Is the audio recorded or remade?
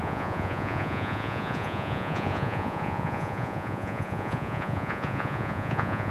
remade